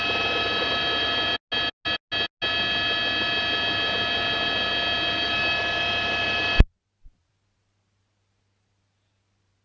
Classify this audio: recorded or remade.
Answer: recorded